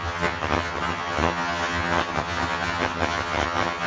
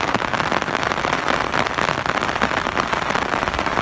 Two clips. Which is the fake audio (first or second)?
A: first